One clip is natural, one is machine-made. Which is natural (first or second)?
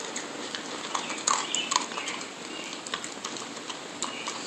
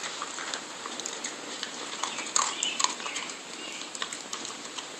first